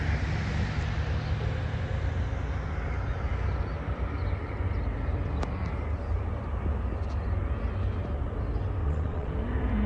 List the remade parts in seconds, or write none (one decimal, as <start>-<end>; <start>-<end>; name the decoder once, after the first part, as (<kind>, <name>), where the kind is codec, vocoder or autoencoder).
8.8-9.3 (vocoder, WaveNeXt)